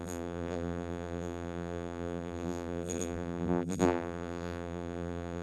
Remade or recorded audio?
remade